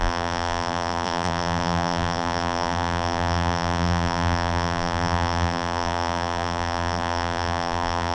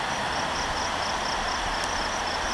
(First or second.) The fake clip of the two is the first